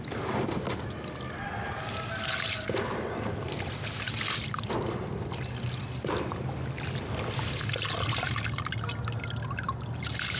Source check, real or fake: real